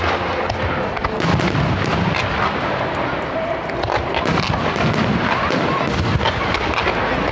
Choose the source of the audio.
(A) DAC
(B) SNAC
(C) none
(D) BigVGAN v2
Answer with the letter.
C